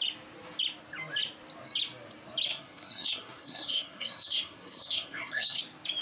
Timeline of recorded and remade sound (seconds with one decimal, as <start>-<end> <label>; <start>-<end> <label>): 0.0-2.5 recorded; 2.5-5.6 remade; 5.6-6.0 recorded